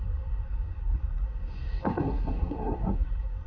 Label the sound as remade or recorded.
remade